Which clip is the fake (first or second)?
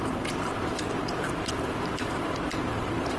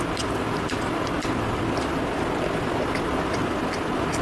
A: first